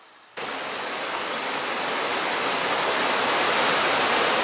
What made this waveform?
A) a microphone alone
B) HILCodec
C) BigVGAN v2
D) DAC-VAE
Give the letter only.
A